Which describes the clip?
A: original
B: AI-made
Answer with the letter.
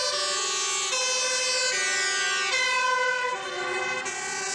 A